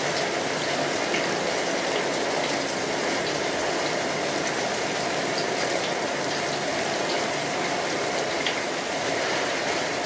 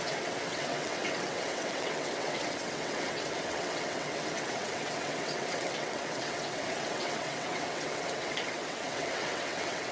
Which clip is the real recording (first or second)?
first